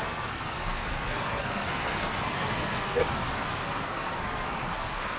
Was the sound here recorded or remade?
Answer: remade